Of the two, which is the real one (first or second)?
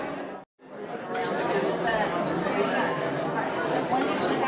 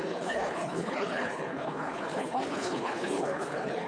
first